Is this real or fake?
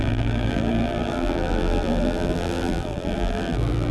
fake